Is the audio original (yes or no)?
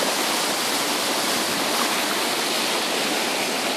yes